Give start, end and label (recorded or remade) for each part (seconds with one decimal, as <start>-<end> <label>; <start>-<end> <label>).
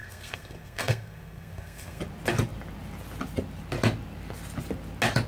0.0-2.0 remade; 2.0-5.3 recorded